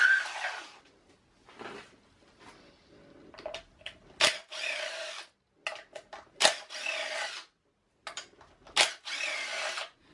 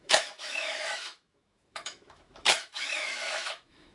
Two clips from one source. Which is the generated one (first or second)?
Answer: second